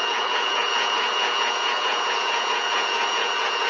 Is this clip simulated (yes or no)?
yes